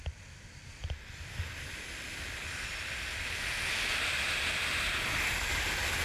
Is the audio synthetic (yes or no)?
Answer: no